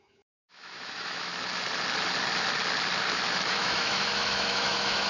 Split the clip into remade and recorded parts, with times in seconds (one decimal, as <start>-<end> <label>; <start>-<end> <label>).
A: 0.0-1.3 remade; 1.3-3.5 recorded; 3.5-5.1 remade